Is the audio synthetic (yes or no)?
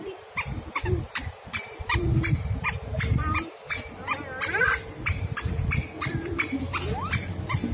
yes